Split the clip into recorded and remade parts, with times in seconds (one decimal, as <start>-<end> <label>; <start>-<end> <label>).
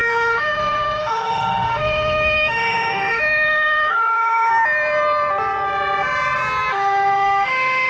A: 0.0-4.5 remade; 4.5-6.7 recorded; 6.7-7.9 remade